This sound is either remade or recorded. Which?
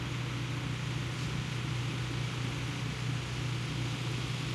recorded